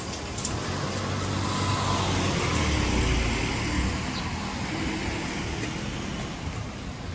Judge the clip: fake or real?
real